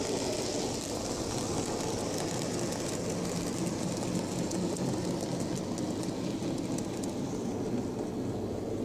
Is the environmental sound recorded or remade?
recorded